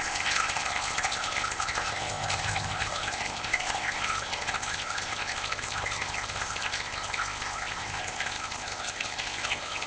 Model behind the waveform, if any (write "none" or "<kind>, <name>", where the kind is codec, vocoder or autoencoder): codec, ZipCodec